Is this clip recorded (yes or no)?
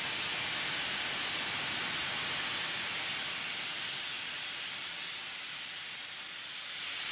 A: yes